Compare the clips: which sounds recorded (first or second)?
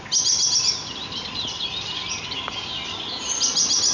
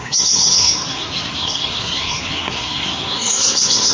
first